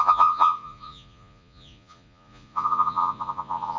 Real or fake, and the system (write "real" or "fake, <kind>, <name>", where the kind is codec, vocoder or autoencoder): fake, vocoder, Vocos